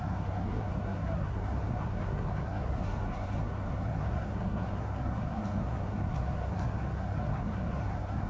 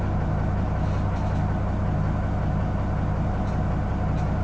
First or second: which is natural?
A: second